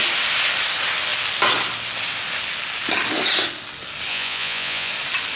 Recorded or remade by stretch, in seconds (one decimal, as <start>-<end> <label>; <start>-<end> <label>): 0.0-4.1 recorded; 4.1-4.9 remade; 4.9-5.4 recorded